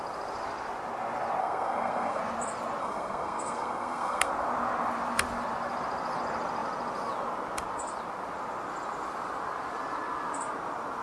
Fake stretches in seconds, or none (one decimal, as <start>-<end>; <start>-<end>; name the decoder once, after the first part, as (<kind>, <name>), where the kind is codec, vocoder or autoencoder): 1.4-2.2 (codec, SNAC); 2.8-4.3